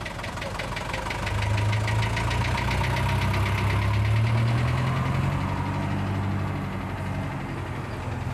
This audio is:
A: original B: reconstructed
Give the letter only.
A